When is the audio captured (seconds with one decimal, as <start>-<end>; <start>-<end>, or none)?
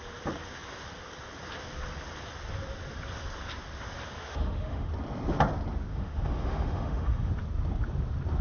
0.0-4.2; 4.9-5.9; 7.3-8.4